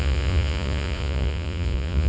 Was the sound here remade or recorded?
remade